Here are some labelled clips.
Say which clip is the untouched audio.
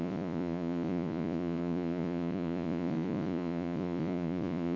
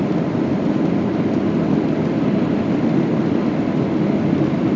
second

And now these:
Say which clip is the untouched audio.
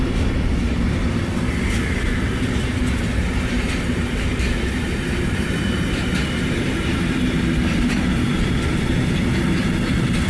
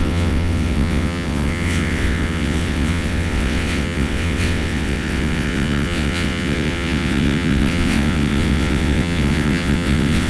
first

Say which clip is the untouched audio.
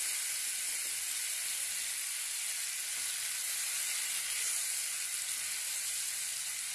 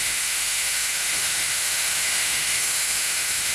first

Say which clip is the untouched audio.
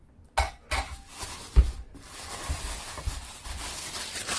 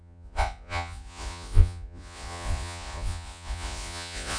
first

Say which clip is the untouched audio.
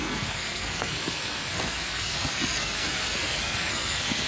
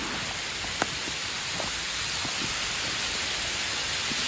second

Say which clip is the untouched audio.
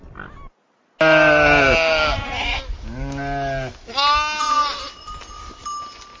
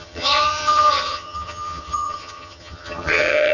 first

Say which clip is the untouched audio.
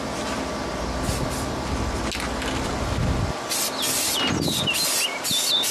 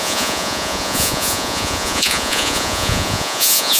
first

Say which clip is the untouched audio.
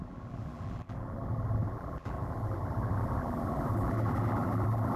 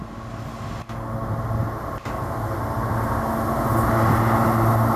second